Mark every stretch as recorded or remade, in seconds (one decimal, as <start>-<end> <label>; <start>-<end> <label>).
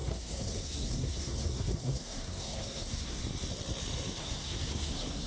0.0-3.2 remade; 3.2-4.2 recorded; 4.2-5.3 remade